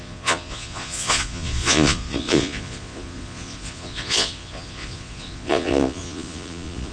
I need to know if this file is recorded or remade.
remade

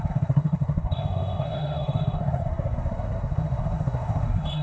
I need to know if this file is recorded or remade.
remade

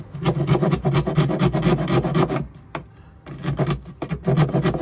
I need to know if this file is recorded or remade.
recorded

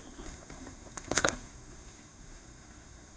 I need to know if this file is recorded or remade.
remade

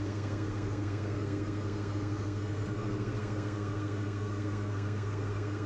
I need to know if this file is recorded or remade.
remade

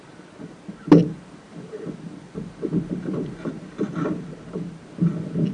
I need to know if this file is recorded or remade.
recorded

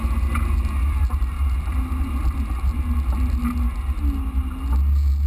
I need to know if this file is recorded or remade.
recorded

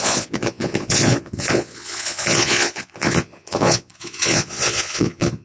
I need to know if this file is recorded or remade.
remade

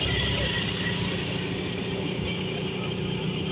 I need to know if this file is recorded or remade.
recorded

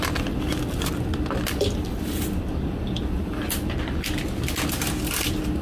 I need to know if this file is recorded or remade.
recorded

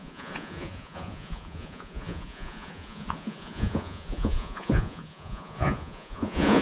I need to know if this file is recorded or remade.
remade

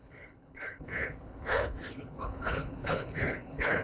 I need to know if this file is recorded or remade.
remade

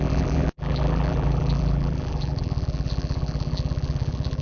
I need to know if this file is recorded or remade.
remade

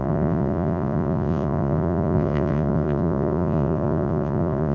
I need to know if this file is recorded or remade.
remade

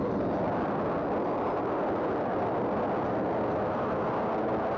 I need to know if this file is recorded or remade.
recorded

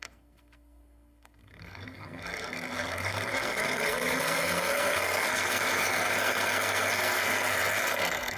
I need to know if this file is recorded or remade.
remade